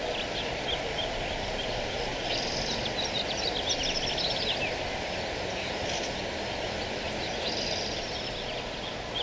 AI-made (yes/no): yes